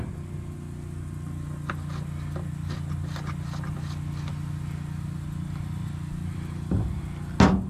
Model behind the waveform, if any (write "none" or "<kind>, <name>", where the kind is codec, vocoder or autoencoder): none